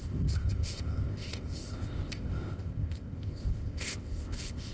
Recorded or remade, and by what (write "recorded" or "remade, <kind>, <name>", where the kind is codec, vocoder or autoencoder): remade, codec, ZipCodec